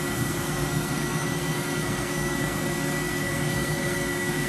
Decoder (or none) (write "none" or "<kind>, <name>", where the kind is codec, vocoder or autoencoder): codec, SNAC